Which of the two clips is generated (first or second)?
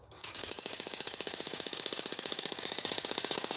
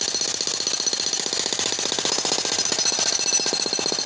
first